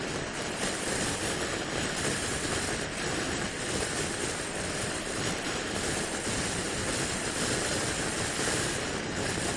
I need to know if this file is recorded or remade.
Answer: remade